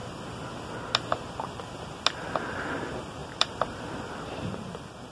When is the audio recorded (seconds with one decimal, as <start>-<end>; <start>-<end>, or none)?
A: 0.0-3.2; 3.8-5.1